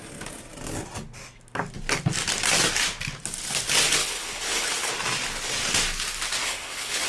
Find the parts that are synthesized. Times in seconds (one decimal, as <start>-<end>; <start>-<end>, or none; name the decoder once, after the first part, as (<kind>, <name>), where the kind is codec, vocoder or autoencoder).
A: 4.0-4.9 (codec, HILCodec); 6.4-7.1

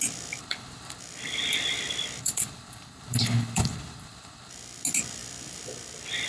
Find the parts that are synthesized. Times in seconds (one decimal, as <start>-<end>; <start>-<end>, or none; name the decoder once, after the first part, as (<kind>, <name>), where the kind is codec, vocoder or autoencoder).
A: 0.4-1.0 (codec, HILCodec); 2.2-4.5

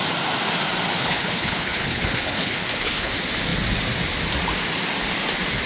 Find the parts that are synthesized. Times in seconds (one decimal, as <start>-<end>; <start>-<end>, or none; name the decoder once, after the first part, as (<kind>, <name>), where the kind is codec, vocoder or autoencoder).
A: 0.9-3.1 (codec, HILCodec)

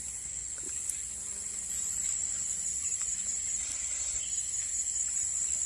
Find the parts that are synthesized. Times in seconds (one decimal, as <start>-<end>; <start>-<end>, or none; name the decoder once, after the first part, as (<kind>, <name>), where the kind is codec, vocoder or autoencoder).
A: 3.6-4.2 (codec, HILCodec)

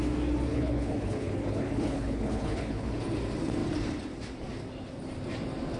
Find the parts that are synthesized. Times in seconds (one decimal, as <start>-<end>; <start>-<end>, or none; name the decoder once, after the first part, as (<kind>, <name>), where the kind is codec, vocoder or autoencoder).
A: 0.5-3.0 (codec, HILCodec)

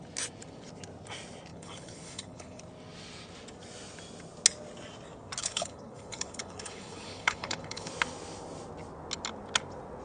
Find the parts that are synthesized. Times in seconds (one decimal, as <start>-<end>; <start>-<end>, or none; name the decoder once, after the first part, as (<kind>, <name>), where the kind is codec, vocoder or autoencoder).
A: 1.5-2.6 (codec, HILCodec); 5.4-7.9

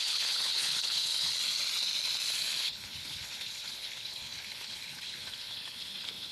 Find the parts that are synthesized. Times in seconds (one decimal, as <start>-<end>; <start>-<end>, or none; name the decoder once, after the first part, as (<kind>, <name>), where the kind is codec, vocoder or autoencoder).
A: 0.0-1.3 (codec, HILCodec); 2.6-6.3

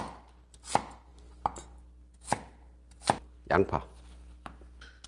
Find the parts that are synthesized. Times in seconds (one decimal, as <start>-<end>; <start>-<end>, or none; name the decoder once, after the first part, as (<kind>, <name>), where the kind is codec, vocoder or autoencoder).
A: none